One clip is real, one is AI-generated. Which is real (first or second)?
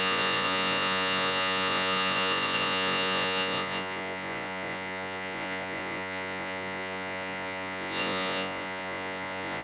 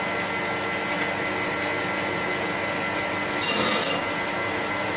second